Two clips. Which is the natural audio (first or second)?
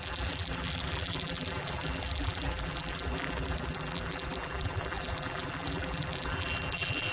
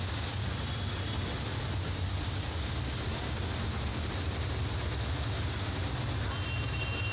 second